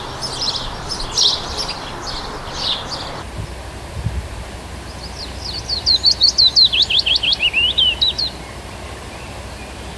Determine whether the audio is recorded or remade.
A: recorded